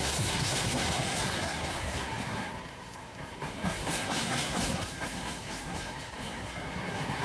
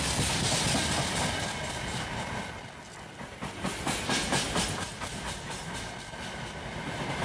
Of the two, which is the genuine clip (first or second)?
second